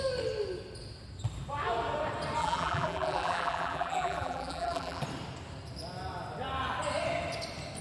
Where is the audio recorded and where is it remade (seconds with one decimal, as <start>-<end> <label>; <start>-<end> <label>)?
0.0-2.4 recorded; 2.4-5.0 remade; 5.0-7.8 recorded